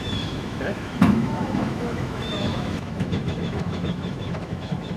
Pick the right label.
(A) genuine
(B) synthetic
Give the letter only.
B